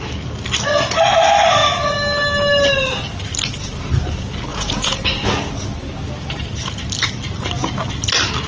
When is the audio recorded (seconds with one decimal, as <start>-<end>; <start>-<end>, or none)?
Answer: 0.0-4.5; 5.1-8.5